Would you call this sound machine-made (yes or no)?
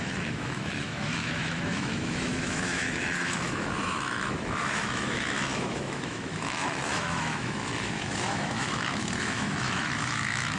yes